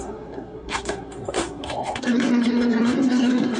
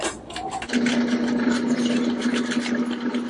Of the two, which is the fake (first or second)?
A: first